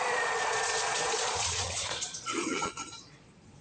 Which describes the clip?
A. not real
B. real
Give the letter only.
A